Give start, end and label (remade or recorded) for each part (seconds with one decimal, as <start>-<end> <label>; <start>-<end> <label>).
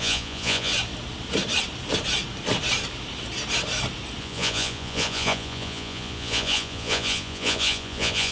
0.0-0.7 remade; 0.7-4.2 recorded; 4.2-8.3 remade